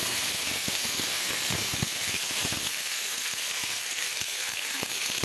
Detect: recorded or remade remade